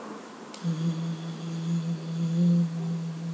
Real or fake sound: real